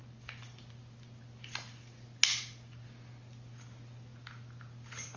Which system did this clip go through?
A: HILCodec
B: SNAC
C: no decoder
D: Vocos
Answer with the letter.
C